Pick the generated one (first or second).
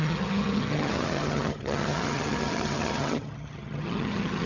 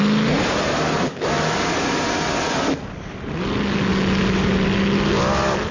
first